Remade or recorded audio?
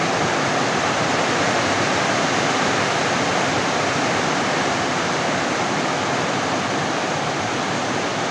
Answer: remade